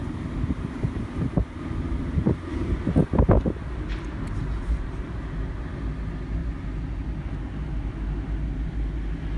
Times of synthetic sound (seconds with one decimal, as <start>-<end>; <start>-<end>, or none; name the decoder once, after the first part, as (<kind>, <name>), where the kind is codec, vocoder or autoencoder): 0.0-3.3 (vocoder, BigVGAN v2)